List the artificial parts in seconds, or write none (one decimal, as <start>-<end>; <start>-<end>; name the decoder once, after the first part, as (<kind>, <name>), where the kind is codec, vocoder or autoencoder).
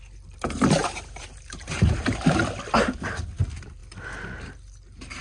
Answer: 0.8-2.4 (vocoder, BigVGAN v2)